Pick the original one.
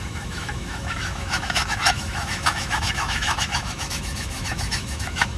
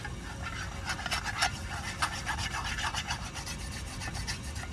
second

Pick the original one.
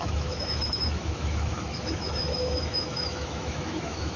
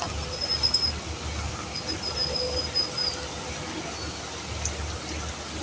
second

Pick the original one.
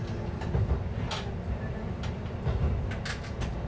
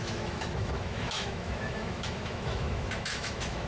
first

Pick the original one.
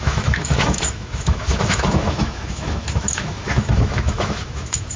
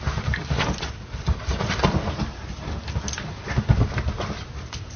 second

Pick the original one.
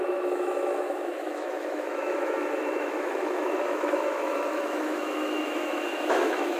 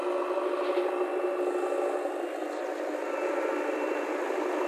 second